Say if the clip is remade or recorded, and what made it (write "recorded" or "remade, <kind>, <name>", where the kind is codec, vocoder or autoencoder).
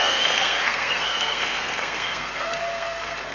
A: remade, codec, SNAC